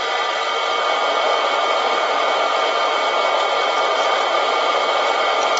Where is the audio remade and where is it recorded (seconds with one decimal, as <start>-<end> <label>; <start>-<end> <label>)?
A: 0.0-5.6 recorded